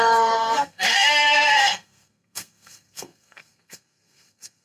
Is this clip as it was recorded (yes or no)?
no